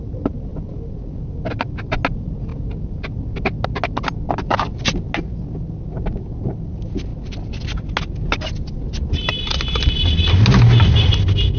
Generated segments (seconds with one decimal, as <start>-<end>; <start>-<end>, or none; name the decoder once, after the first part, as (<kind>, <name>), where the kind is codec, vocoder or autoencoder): none